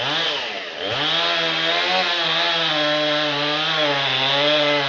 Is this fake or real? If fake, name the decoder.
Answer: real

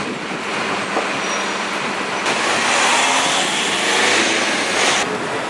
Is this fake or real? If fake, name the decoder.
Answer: real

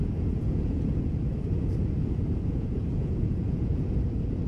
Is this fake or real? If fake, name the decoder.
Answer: fake, vocoder, Vocos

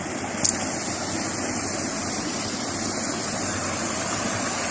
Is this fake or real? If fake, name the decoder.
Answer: real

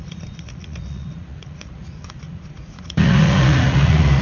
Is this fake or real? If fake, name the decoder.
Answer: fake, vocoder, Vocos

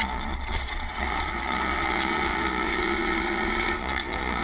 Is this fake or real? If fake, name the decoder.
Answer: fake, vocoder, Vocos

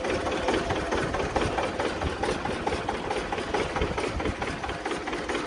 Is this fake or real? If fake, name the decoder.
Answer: real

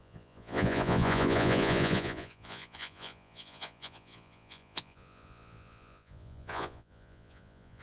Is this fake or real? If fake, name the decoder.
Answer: fake, vocoder, Vocos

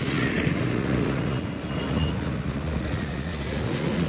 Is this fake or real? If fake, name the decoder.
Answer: fake, vocoder, Vocos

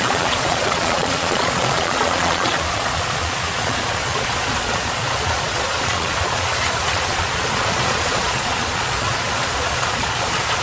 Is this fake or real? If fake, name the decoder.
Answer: fake, vocoder, Vocos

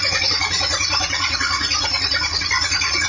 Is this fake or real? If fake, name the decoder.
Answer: fake, vocoder, Vocos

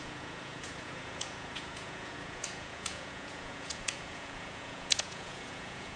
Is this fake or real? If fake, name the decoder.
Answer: fake, vocoder, Vocos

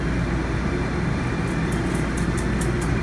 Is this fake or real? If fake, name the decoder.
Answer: real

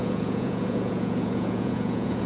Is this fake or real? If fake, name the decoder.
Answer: fake, vocoder, Vocos